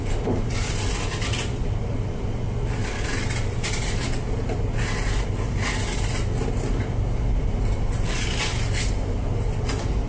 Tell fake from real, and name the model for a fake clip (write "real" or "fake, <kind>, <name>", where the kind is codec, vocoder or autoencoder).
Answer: real